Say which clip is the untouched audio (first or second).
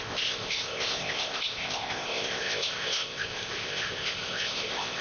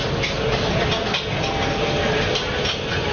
second